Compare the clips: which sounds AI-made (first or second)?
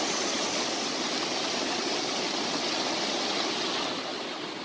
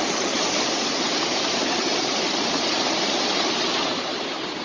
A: second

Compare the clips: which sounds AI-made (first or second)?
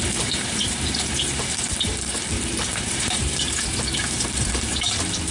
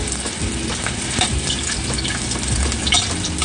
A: first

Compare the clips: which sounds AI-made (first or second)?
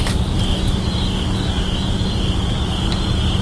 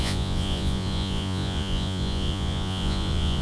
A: second